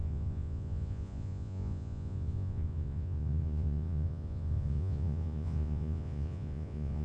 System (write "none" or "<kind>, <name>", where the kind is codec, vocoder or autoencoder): vocoder, Vocos